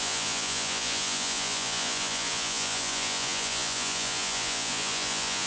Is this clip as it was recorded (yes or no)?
no